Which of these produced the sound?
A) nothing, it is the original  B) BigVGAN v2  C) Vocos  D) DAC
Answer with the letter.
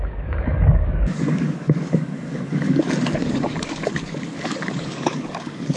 D